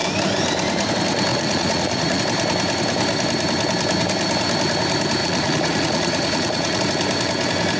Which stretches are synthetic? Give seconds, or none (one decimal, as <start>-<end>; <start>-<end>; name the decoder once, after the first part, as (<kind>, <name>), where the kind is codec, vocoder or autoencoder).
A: 1.3-2.2 (vocoder, Vocos); 5.2-6.8